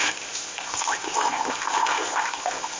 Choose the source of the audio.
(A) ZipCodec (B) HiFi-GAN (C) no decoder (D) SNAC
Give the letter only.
A